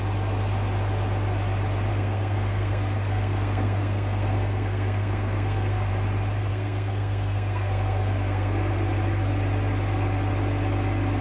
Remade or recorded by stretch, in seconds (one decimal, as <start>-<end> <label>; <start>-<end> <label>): 0.0-1.9 recorded; 1.9-5.9 remade; 5.9-6.5 recorded; 6.5-8.7 remade; 8.7-11.2 recorded